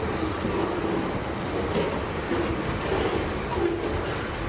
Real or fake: real